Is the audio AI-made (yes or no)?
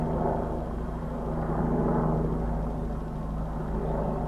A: no